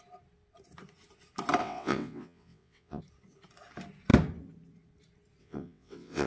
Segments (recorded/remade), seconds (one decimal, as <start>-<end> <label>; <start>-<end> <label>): 0.0-1.6 recorded; 1.6-3.0 remade; 3.0-5.4 recorded; 5.4-6.3 remade